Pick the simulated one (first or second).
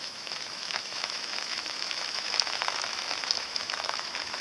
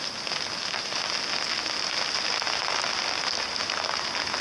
first